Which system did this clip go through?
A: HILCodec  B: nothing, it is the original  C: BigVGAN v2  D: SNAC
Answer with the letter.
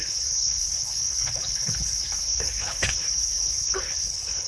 A